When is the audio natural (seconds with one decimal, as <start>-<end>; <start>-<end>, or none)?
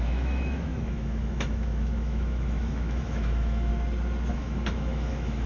3.7-4.3